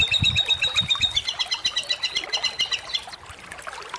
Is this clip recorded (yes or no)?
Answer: yes